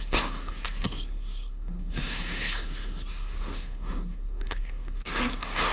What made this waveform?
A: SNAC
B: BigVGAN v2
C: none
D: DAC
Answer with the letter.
A